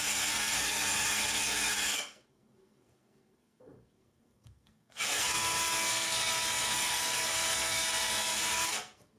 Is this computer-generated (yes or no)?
yes